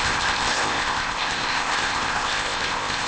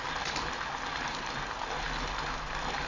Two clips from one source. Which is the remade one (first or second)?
first